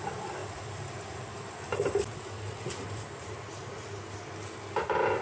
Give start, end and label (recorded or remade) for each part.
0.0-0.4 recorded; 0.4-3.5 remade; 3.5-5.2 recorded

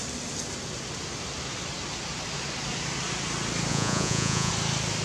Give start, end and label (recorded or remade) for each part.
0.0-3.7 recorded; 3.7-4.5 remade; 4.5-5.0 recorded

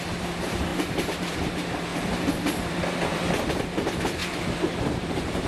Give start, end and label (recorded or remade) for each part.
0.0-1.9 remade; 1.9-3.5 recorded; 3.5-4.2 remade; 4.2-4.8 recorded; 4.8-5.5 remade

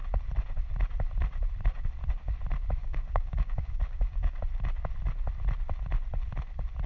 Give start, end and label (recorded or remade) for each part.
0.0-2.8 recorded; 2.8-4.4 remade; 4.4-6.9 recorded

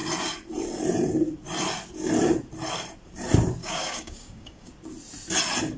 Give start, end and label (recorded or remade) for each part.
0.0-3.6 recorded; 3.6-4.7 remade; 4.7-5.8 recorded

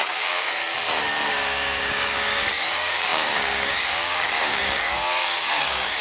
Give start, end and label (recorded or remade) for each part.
0.0-0.6 remade; 0.6-1.3 recorded; 1.3-6.0 remade

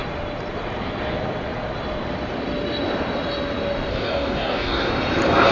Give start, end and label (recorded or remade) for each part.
0.0-3.9 recorded; 3.9-4.9 remade; 4.9-5.5 recorded

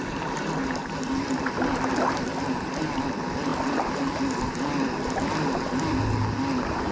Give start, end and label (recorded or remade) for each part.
0.0-6.9 recorded